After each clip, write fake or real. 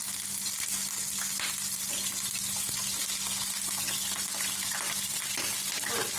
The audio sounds real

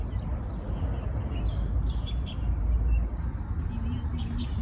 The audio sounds real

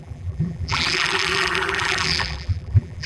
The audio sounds fake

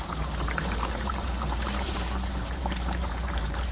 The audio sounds fake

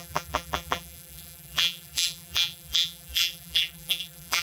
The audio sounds fake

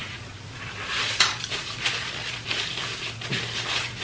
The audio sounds real